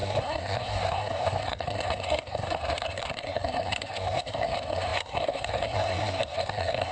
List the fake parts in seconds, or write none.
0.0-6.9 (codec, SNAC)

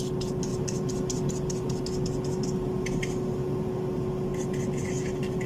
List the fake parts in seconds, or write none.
none

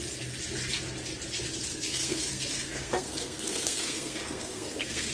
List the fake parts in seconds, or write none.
1.7-5.1 (codec, SNAC)